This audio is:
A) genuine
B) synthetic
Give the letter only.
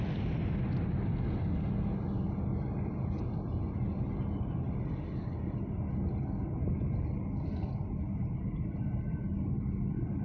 A